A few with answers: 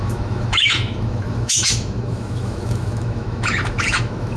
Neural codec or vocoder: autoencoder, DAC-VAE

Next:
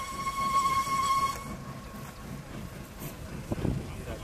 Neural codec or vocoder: none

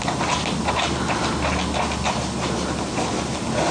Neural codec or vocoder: none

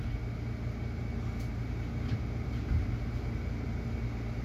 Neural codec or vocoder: none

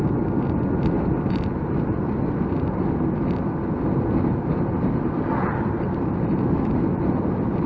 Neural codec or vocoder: none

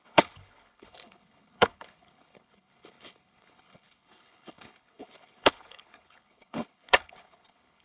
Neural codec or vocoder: codec, HILCodec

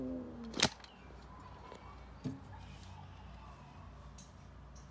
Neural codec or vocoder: none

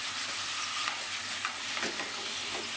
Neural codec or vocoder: none